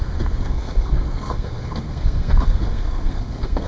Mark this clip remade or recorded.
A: remade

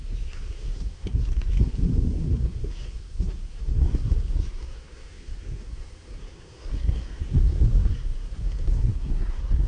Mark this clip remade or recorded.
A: remade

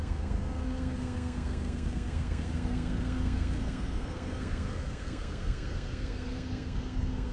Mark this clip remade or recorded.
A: remade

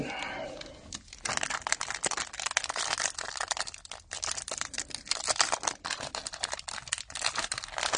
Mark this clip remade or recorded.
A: recorded